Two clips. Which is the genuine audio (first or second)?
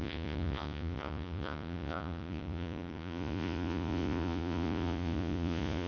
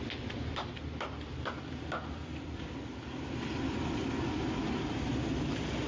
second